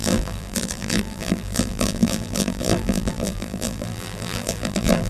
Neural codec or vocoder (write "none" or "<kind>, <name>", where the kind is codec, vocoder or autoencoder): vocoder, BigVGAN v2